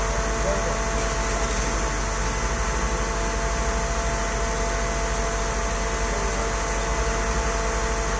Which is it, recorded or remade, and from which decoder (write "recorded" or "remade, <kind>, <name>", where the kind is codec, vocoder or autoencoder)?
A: recorded